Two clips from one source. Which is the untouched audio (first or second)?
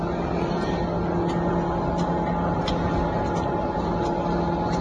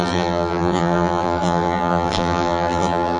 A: first